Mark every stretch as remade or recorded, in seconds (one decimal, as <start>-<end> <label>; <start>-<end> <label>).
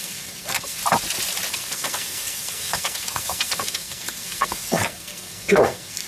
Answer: 0.0-0.8 remade; 0.8-1.5 recorded; 1.5-6.1 remade